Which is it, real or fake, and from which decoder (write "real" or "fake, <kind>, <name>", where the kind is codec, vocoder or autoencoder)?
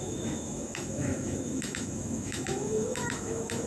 fake, autoencoder, DAC-VAE